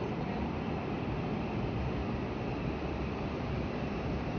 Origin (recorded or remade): remade